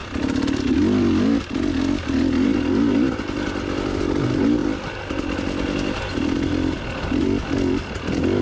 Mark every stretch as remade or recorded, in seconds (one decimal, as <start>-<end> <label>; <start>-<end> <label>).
0.0-8.4 recorded